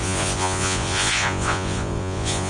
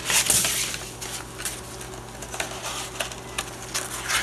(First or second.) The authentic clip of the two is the second